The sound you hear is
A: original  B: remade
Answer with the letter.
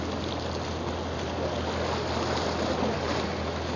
A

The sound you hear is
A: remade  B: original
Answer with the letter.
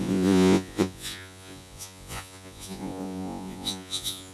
A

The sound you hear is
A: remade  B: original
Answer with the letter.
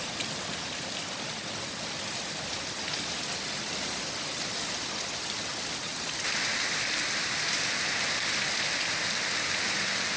B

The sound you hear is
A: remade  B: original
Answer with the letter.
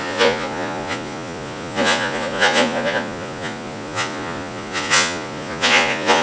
A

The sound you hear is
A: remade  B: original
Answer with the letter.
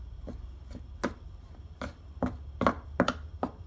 B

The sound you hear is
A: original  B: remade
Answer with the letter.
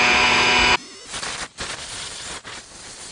A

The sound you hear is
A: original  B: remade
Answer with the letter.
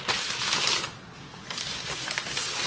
A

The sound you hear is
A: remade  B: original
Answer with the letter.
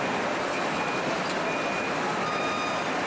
B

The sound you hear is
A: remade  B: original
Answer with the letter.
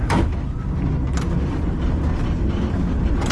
B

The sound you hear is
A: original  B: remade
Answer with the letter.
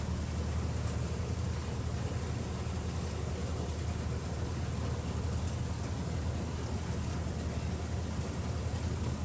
A